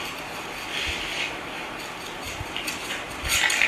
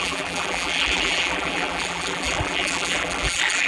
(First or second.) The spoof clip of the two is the second